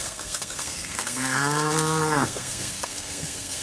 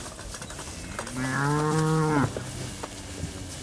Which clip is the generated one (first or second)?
first